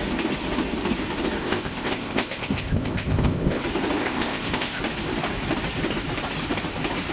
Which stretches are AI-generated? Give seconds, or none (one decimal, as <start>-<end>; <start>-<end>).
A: 1.4-3.6; 4.0-4.8